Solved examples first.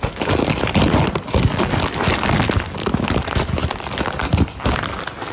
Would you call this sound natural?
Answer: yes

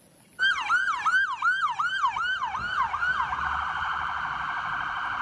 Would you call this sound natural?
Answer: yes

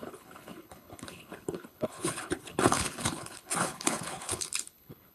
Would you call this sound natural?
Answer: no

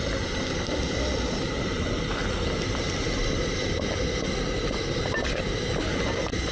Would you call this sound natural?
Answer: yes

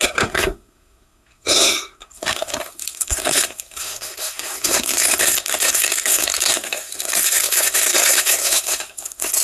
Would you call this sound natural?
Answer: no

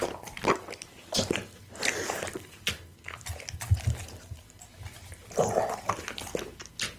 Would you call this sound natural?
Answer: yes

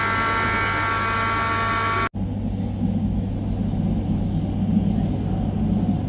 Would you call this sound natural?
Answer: yes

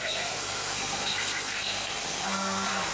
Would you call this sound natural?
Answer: no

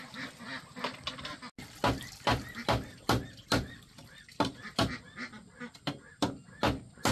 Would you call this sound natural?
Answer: yes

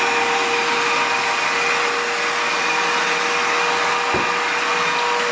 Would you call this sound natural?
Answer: yes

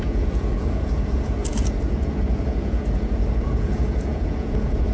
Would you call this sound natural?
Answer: no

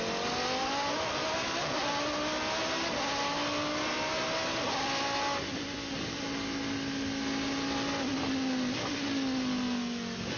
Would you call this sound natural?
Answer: yes